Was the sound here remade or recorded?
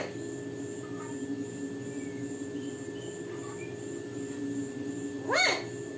recorded